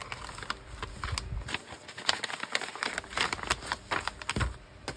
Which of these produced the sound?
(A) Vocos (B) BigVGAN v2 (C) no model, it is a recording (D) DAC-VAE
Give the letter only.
C